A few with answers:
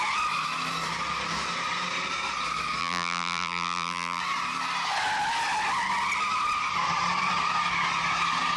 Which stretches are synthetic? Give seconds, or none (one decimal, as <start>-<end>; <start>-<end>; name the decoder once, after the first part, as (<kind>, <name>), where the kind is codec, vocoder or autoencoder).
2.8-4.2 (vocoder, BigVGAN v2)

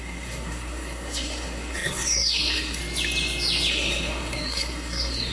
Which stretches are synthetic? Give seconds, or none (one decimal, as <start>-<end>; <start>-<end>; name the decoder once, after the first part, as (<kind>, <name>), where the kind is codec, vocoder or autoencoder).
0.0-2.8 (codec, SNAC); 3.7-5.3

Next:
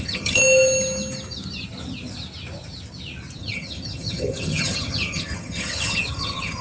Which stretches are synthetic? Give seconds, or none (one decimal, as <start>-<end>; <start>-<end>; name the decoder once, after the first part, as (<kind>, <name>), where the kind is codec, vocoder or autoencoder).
0.0-0.4 (vocoder, HiFi-GAN); 3.4-6.6